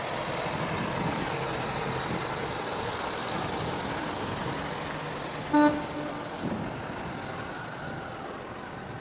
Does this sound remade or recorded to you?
recorded